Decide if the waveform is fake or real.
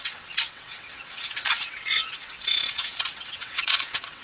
fake